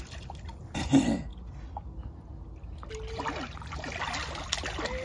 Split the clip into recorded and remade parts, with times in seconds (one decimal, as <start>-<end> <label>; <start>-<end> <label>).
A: 0.0-5.0 recorded